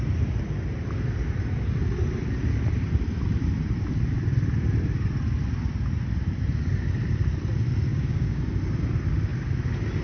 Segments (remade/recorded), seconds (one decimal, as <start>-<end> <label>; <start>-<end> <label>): 0.0-7.9 recorded; 7.9-8.4 remade; 8.4-10.0 recorded

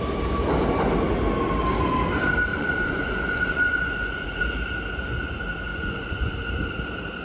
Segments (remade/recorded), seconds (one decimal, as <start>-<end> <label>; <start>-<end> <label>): 0.0-2.5 recorded; 2.5-4.4 remade; 4.4-5.7 recorded; 5.7-6.3 remade; 6.3-7.2 recorded